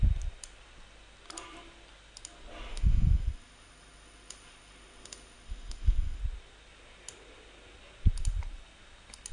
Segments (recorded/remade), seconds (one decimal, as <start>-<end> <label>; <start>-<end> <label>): 0.0-2.7 recorded; 2.7-6.2 remade; 6.2-9.3 recorded